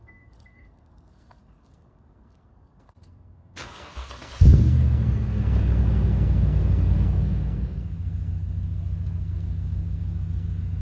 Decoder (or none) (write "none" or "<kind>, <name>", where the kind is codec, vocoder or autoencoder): codec, SNAC